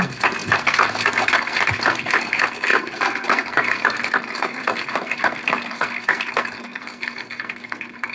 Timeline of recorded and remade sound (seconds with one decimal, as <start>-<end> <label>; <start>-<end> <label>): 0.0-8.1 remade